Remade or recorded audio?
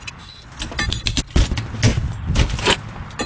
recorded